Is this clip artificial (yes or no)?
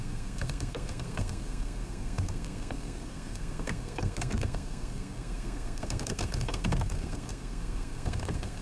yes